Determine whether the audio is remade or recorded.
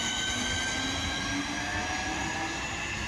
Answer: recorded